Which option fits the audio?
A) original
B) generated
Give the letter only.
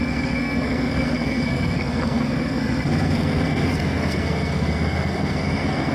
B